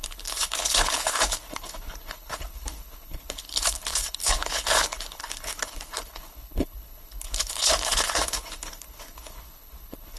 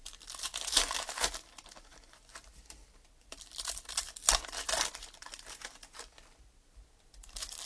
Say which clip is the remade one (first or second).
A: first